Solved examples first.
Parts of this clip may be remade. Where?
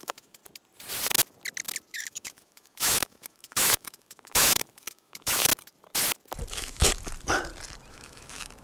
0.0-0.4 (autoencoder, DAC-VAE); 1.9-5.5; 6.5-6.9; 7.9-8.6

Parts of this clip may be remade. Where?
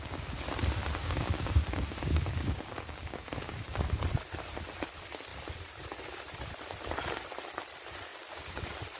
0.8-4.0 (codec, DAC); 8.1-8.6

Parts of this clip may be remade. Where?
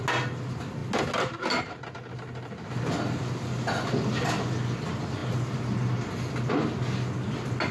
none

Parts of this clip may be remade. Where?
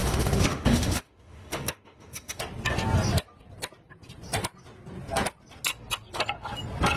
0.0-2.4 (autoencoder, DAC-VAE)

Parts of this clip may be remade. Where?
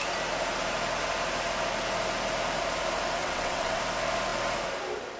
3.2-3.8 (vocoder, WaveNeXt)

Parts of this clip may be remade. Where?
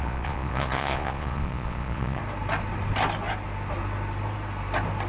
0.0-2.2 (vocoder, Vocos)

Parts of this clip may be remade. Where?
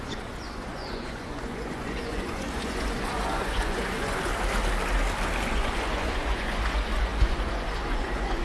0.0-4.3 (vocoder, Vocos); 5.5-8.4